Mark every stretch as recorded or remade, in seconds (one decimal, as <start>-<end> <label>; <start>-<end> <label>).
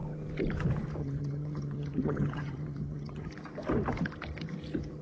0.0-1.0 recorded; 1.0-3.3 remade; 3.3-5.0 recorded